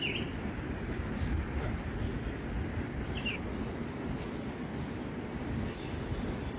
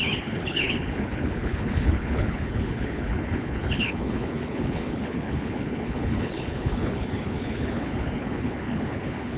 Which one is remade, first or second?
second